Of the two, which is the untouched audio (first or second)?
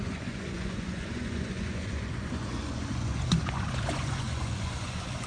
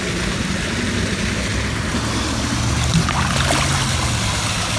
second